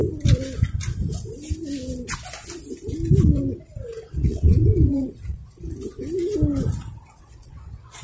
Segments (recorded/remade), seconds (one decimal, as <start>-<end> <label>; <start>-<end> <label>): 0.0-4.1 recorded; 4.1-5.4 remade; 5.4-7.2 recorded; 7.2-8.0 remade